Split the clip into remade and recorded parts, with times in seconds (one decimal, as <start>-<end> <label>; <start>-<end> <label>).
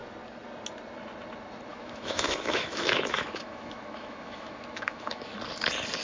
0.0-1.7 recorded; 1.7-5.3 remade; 5.3-6.0 recorded